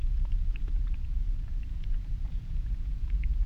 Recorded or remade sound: remade